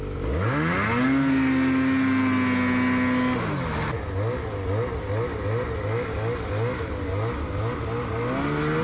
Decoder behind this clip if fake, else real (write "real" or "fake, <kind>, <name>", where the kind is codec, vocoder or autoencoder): real